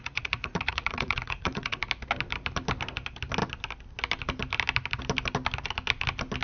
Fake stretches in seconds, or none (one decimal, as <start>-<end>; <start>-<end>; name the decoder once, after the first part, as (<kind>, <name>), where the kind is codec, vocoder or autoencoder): 0.0-1.8 (vocoder, Vocos)